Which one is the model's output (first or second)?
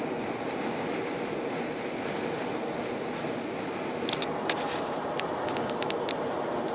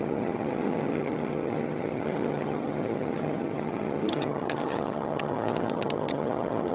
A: second